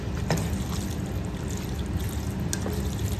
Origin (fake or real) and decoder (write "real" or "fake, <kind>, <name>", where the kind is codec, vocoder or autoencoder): real